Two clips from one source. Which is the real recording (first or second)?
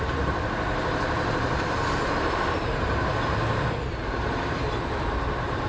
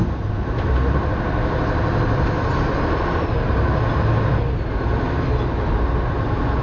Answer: second